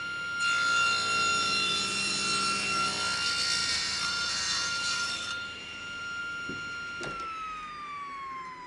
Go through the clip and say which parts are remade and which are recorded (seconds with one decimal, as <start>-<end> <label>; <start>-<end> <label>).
0.0-1.3 recorded; 1.3-2.1 remade; 2.1-3.6 recorded; 3.6-6.2 remade; 6.2-8.7 recorded